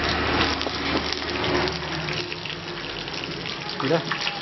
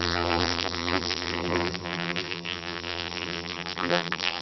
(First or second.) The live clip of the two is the first